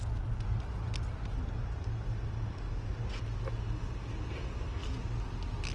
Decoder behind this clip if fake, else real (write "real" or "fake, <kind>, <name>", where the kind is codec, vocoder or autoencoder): real